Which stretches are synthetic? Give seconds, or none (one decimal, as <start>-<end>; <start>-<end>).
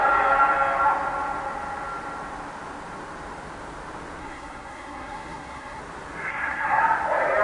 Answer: 4.2-5.8; 6.3-6.8